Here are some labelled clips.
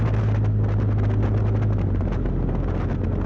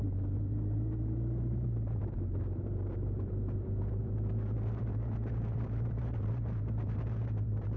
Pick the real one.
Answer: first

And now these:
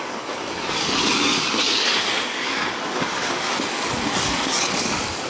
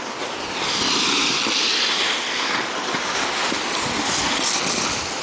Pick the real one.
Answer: second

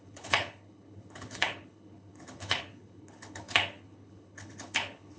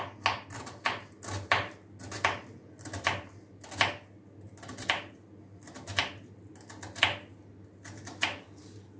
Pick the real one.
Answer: second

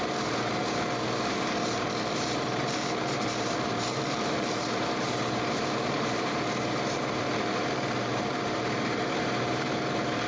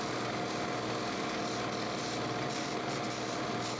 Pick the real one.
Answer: second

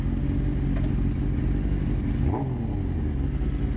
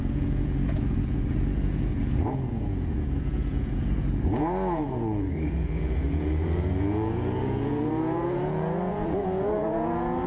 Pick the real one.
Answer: first